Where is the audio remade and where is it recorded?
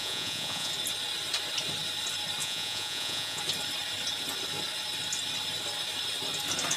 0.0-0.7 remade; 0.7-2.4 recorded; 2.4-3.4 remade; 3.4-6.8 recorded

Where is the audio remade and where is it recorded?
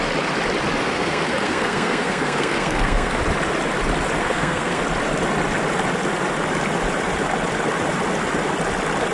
0.0-0.8 recorded; 0.8-3.2 remade; 3.2-4.2 recorded; 4.2-4.8 remade; 4.8-9.1 recorded